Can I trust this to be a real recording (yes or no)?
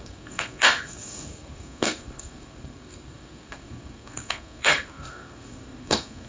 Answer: no